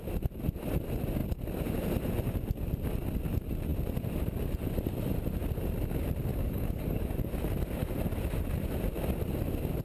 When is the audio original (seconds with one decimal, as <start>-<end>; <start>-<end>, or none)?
0.0-6.3; 7.1-9.8